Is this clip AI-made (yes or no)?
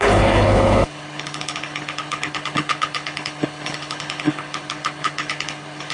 yes